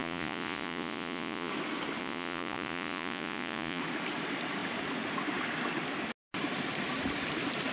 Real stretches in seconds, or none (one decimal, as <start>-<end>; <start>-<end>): 1.5-2.0; 3.8-7.7